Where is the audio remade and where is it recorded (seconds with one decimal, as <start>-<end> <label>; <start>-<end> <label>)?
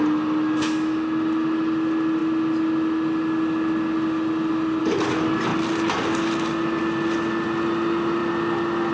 0.0-8.9 recorded